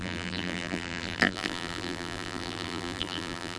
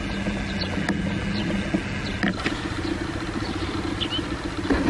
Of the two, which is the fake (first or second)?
first